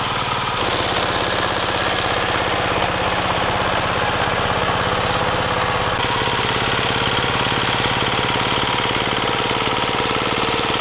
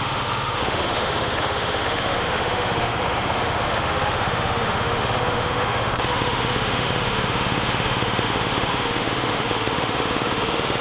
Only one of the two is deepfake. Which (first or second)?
second